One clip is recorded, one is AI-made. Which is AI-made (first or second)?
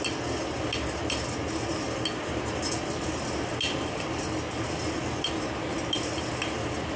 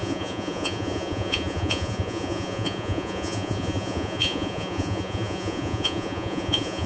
second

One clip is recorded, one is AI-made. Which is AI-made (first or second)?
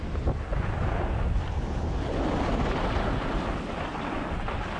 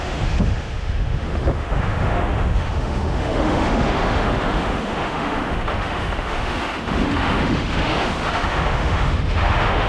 second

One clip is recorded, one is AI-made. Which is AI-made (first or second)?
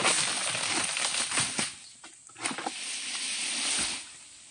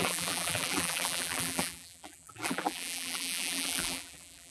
second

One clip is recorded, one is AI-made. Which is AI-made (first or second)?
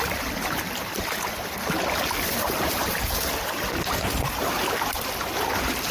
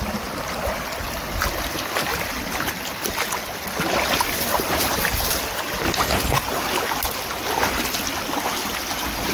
first